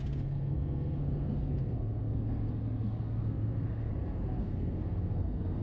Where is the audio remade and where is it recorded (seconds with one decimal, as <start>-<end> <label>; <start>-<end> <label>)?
0.0-3.9 remade; 3.9-4.4 recorded; 4.4-5.6 remade